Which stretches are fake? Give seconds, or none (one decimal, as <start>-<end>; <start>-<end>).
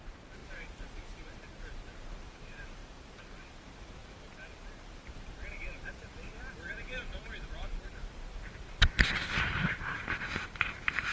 0.0-11.1